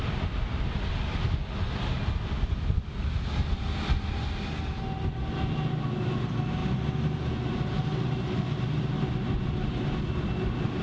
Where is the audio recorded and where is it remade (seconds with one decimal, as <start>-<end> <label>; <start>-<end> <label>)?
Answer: 0.0-10.8 recorded